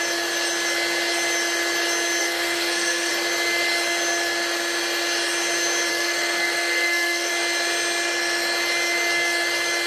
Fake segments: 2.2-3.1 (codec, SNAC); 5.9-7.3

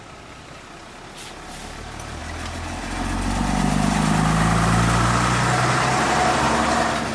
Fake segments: none

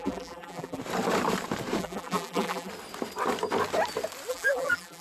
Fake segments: 0.0-0.8 (vocoder, BigVGAN v2); 1.8-2.7; 4.3-5.0

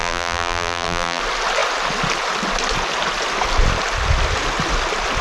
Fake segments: 0.0-1.2 (vocoder, BigVGAN v2)

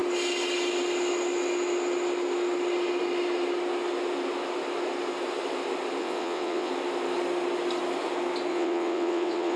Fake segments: 6.0-6.7 (vocoder, WaveNeXt); 8.5-9.6

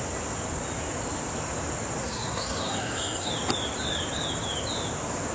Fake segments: 2.0-3.3 (codec, SNAC)

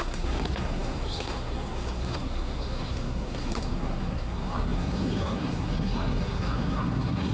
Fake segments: 0.0-7.3 (codec, SNAC)

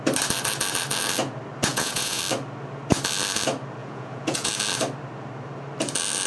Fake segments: 1.7-2.2 (vocoder, Vocos); 3.8-4.5